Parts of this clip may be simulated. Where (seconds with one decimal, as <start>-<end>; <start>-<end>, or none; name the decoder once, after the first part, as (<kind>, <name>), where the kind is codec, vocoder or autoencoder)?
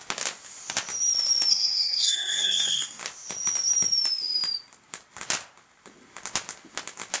1.5-3.0 (codec, SNAC)